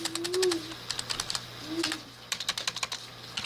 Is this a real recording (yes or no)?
yes